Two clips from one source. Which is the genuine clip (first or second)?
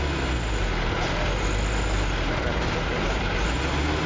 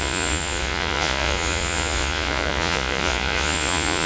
first